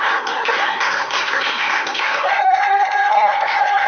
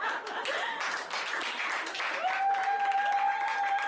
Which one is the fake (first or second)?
first